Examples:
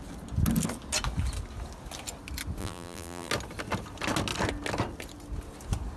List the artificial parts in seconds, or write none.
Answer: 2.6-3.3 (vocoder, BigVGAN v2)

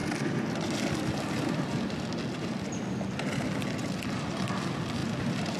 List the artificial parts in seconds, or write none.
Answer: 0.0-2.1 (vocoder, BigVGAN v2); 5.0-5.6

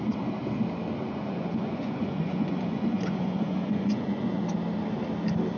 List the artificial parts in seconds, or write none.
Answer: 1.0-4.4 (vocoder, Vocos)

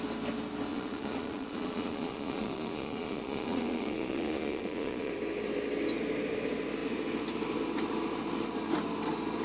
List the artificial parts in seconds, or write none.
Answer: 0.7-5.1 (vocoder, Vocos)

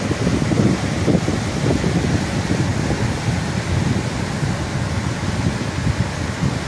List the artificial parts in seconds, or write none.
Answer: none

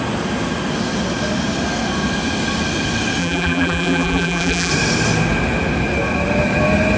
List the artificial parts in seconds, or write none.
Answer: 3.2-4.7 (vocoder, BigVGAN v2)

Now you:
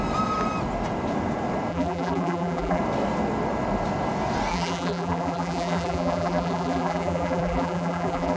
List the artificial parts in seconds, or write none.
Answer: 1.7-2.8 (vocoder, BigVGAN v2); 4.5-8.4

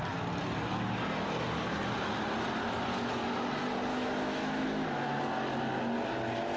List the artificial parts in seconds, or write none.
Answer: 3.9-5.2 (autoencoder, DAC-VAE)